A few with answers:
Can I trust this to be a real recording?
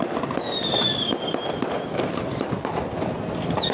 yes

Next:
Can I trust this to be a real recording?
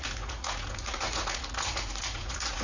no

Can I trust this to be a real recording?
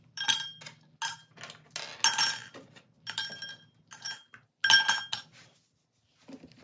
yes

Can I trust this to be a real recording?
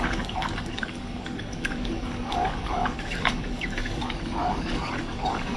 no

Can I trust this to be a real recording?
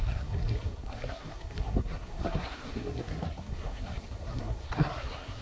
no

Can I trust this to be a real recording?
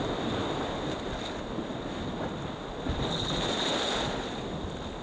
yes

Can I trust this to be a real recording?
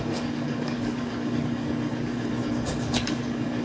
no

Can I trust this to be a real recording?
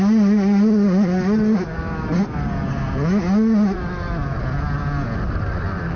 yes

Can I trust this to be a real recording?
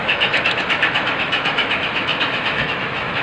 no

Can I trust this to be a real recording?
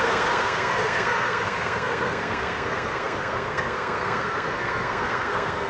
no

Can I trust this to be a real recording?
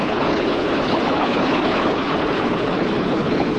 no